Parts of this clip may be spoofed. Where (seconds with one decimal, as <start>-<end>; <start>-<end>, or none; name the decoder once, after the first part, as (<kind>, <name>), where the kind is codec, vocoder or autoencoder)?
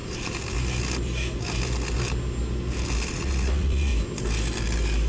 3.1-3.9 (vocoder, Vocos)